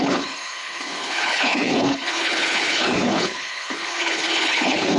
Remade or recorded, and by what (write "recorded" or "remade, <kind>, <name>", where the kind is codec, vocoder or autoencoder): remade, codec, HILCodec